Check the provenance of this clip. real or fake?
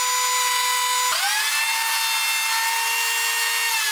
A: real